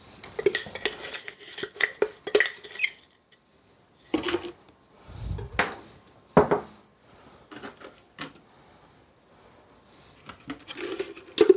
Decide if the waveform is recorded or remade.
recorded